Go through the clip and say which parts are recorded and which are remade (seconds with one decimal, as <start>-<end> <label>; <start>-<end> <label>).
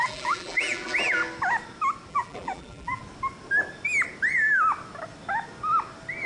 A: 0.0-1.2 remade; 1.2-2.1 recorded; 2.1-3.0 remade; 3.0-6.3 recorded